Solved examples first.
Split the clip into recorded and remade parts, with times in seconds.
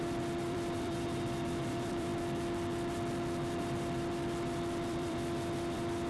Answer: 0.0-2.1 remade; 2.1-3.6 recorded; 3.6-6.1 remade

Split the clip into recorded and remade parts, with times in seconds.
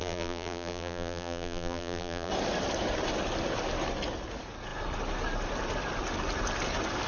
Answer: 0.0-2.3 remade; 2.3-7.1 recorded